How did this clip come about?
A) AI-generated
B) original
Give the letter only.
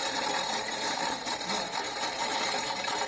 A